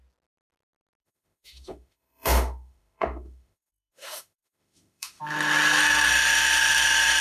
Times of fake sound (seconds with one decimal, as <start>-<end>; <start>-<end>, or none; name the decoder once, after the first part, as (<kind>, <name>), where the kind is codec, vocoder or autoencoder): 1.0-5.2 (autoencoder, DAC-VAE)